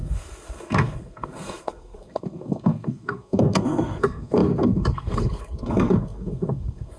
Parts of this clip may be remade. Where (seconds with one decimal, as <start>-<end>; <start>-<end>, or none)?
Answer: 0.0-7.0